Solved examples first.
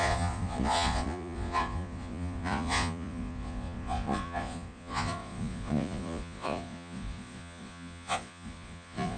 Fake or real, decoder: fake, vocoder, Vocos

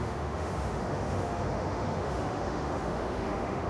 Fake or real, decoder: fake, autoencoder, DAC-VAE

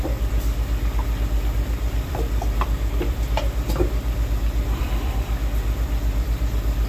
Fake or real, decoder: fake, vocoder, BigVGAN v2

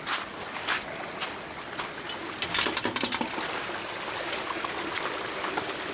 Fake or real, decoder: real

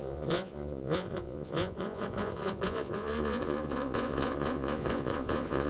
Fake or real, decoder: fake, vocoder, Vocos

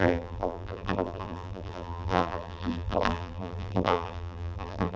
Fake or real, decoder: fake, vocoder, BigVGAN v2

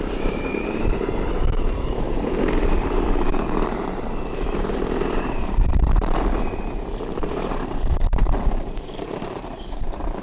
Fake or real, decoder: fake, vocoder, BigVGAN v2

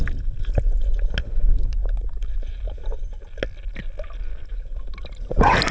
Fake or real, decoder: real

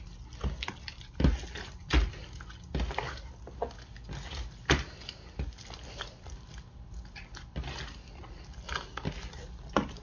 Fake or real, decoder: real